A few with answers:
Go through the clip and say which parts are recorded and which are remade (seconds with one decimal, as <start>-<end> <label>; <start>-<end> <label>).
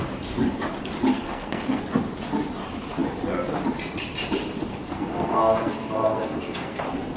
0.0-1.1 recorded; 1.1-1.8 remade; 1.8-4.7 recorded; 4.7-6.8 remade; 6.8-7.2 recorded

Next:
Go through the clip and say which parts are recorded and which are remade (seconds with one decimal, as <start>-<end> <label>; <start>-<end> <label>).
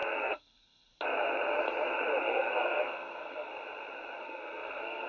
0.0-0.9 remade; 0.9-2.2 recorded; 2.2-3.5 remade; 3.5-4.2 recorded; 4.2-5.1 remade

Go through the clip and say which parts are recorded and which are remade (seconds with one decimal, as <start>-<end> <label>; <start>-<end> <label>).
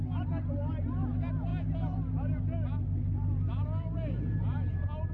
0.0-5.1 recorded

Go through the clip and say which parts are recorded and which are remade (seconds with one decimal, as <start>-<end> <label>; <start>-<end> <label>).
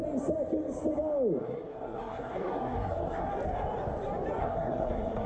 0.0-1.4 recorded; 1.4-3.3 remade; 3.3-4.4 recorded; 4.4-5.3 remade